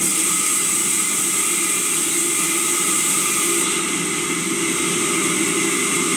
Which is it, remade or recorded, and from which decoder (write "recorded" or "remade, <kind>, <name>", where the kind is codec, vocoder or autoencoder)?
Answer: recorded